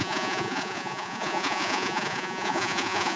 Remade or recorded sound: remade